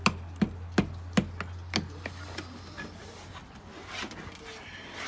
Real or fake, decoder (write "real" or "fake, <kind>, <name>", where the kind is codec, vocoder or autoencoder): real